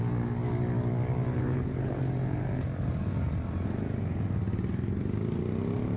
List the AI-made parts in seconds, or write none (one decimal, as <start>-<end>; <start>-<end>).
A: 1.4-2.0